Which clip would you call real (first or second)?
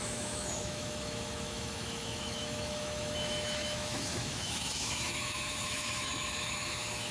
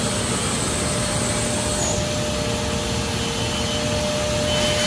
second